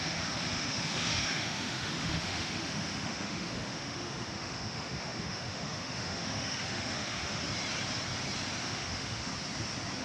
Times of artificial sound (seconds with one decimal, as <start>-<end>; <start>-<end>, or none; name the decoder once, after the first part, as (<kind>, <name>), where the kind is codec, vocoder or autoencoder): 0.0-7.4 (autoencoder, DAC-VAE); 8.6-9.3